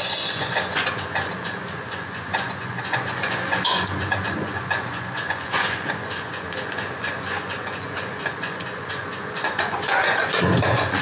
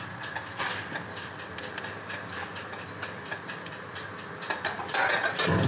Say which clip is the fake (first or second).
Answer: first